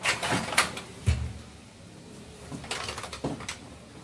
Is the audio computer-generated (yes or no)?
no